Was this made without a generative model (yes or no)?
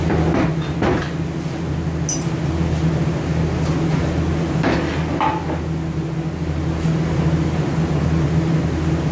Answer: yes